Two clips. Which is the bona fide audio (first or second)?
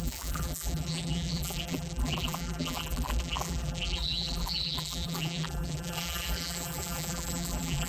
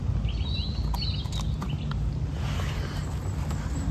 second